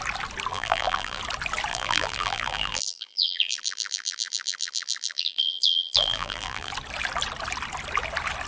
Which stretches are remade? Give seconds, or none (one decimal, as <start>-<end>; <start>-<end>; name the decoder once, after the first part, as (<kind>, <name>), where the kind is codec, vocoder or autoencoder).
0.5-1.2 (vocoder, BigVGAN v2); 1.7-6.7